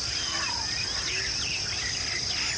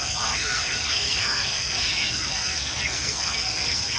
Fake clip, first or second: second